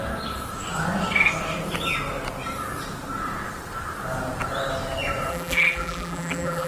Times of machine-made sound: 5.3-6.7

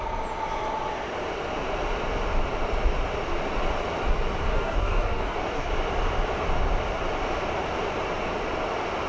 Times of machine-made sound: 4.5-5.7

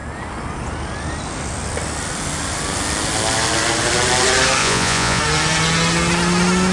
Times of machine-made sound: 4.6-5.2

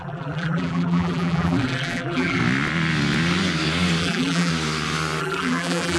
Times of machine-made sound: 0.0-2.4; 4.0-4.5; 5.2-6.0

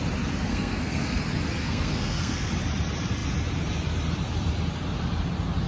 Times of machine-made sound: 0.5-1.2; 1.6-2.5

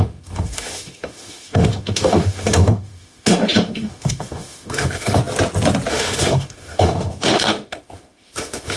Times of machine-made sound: 0.0-5.2; 5.9-8.8

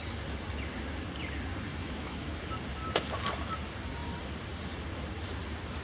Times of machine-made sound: 1.7-2.4